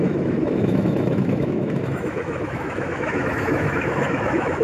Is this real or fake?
fake